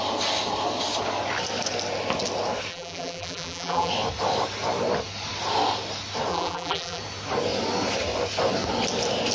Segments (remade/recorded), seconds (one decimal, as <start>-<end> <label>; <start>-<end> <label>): 0.0-2.7 recorded; 2.7-3.9 remade; 3.9-6.3 recorded; 6.3-7.0 remade; 7.0-9.3 recorded